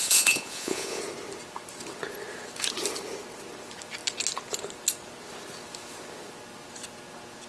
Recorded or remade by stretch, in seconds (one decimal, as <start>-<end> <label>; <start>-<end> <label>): 0.0-1.0 remade; 1.0-7.5 recorded